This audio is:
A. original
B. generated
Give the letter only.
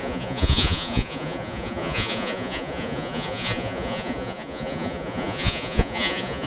B